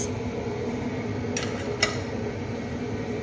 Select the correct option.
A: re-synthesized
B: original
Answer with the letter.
B